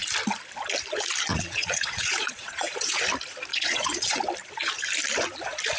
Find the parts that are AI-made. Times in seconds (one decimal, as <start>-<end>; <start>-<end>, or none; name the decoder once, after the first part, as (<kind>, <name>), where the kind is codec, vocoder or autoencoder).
1.3-3.0 (vocoder, Vocos); 3.5-4.2